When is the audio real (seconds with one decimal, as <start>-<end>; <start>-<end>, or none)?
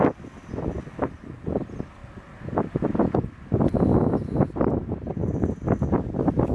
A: 0.0-6.5